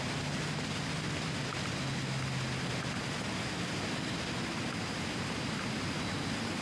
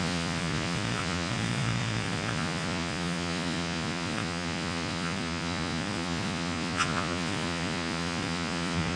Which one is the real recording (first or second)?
first